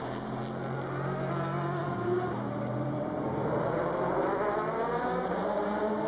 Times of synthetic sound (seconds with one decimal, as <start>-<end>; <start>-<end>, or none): 0.0-0.4; 1.8-6.1